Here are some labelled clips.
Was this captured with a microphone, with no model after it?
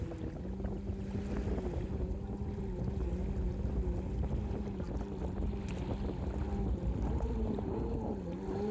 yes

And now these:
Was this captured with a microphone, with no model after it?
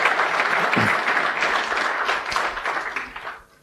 yes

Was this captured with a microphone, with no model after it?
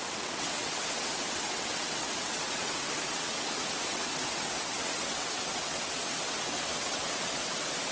no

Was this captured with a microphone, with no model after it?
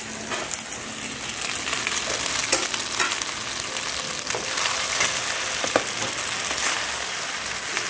yes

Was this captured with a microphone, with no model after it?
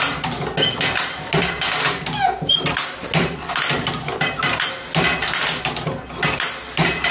yes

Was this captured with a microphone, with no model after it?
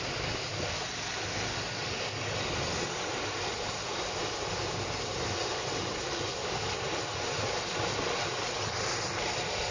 yes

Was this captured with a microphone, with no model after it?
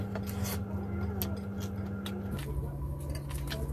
yes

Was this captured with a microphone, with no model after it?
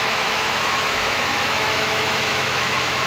no